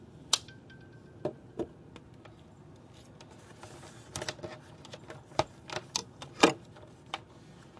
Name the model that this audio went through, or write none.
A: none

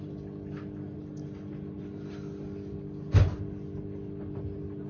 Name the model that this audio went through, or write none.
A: none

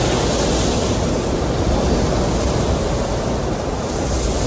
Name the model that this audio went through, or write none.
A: none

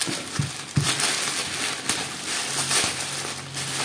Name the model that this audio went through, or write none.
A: none